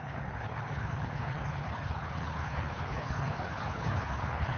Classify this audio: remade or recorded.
remade